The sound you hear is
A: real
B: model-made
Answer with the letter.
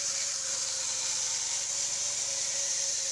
A